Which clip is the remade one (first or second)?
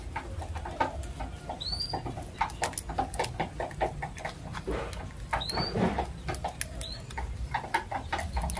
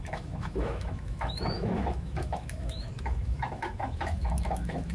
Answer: second